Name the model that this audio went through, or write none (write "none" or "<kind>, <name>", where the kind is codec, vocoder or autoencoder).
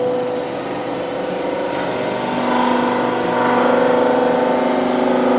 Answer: none